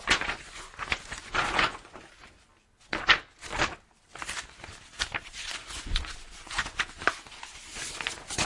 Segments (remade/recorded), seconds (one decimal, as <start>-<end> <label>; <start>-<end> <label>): 0.0-2.0 remade; 2.0-5.3 recorded; 5.3-8.4 remade